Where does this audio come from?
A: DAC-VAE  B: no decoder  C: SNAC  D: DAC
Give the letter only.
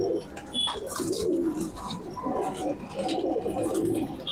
B